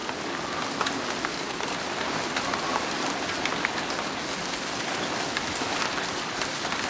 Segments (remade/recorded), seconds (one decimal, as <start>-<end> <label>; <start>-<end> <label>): 0.0-6.9 recorded